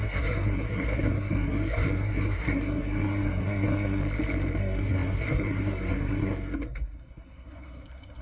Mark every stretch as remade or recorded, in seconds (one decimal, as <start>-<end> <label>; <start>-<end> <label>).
0.0-4.0 remade; 4.0-4.6 recorded; 4.6-8.2 remade